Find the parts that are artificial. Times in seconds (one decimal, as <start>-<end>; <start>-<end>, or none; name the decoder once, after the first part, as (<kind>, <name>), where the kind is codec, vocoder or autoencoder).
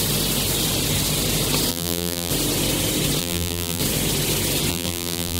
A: 1.7-2.3 (vocoder, BigVGAN v2); 3.2-3.8; 4.7-5.4